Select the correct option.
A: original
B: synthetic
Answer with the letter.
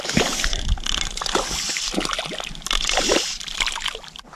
A